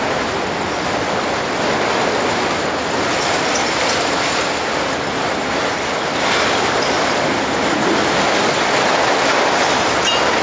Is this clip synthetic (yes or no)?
no